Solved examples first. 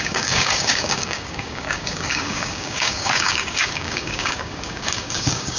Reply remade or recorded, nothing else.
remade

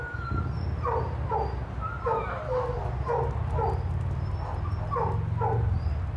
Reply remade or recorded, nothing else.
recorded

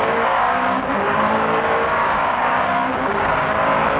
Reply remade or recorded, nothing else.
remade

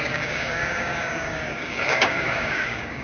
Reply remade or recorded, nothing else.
remade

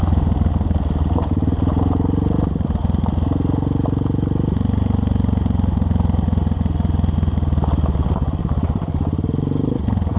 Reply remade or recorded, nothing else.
recorded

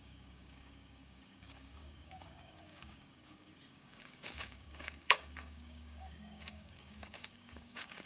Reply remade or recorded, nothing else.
remade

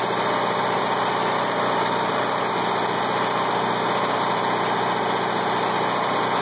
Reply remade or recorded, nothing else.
recorded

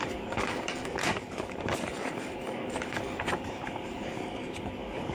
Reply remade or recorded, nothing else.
remade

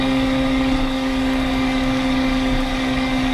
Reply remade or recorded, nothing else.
remade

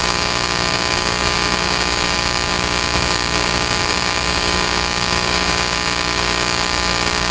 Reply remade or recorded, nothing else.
remade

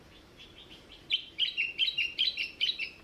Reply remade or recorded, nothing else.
recorded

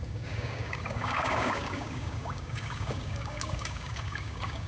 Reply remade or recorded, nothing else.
remade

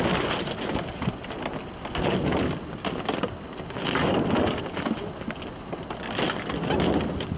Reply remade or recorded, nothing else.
recorded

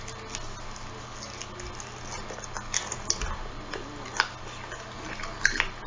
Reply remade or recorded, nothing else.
recorded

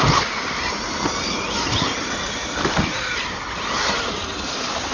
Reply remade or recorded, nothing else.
recorded